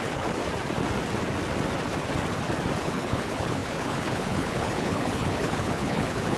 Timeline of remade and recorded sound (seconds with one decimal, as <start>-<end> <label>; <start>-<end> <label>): 0.0-0.4 remade; 0.4-2.8 recorded; 2.8-6.4 remade